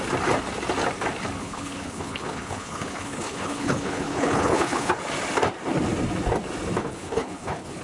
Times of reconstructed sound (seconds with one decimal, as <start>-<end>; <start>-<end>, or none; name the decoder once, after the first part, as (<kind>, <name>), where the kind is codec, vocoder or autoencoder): 1.4-4.9 (codec, HILCodec); 6.8-7.8